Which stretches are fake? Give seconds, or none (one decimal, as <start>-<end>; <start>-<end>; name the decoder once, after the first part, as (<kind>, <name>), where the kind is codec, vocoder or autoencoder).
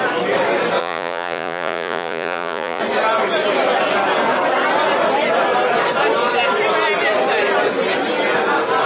0.8-2.8 (vocoder, Vocos)